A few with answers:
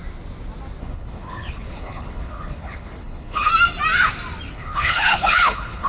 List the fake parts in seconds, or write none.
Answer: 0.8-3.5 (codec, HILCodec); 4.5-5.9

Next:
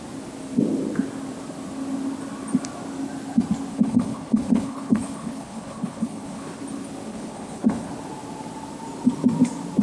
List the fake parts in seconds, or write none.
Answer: 3.7-6.6 (codec, HILCodec); 7.1-7.9

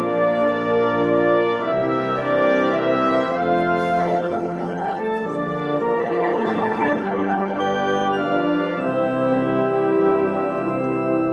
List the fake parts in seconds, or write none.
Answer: 4.0-5.0 (codec, HILCodec); 6.0-7.6

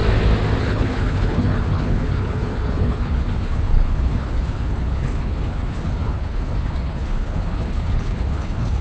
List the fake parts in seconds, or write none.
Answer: 0.6-8.8 (codec, HILCodec)

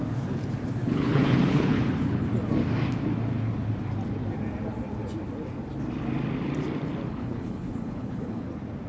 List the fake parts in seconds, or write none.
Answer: 0.8-2.3 (codec, HILCodec); 7.1-8.4

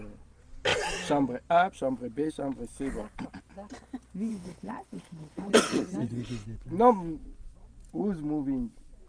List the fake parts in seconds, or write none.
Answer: 4.3-5.5 (codec, HILCodec)

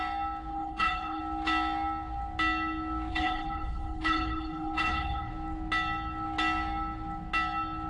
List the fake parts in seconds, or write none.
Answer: 0.5-1.2 (codec, HILCodec); 3.1-5.3

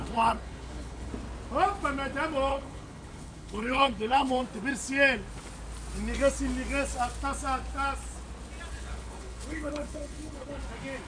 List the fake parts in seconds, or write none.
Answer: 0.0-1.1 (codec, HILCodec); 2.5-4.4; 8.7-10.6